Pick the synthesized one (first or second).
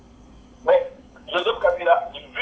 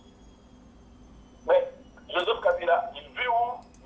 first